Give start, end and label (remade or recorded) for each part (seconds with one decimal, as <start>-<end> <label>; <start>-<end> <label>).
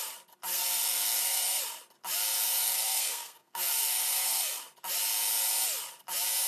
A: 0.0-0.5 recorded; 0.5-1.6 remade; 1.6-2.6 recorded; 2.6-4.6 remade; 4.6-6.5 recorded